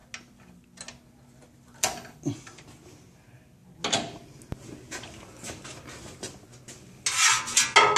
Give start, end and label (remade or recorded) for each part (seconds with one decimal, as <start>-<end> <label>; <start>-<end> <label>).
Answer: 0.0-8.0 recorded